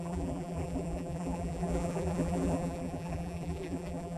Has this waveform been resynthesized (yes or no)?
yes